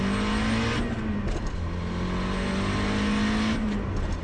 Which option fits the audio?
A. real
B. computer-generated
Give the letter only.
A